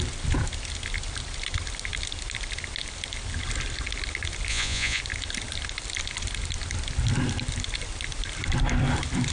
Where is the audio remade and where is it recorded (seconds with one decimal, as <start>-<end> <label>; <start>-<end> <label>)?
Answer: 0.0-4.5 recorded; 4.5-5.0 remade; 5.0-9.3 recorded